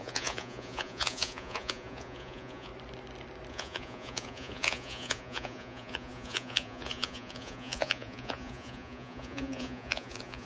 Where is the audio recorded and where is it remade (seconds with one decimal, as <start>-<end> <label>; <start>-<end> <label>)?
0.0-2.7 remade; 2.7-3.5 recorded; 3.5-10.5 remade